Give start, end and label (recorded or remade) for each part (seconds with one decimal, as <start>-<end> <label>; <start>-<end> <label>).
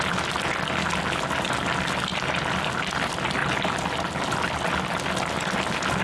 0.0-6.0 recorded